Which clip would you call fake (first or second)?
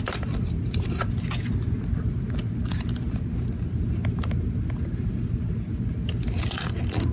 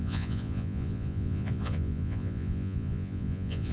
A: second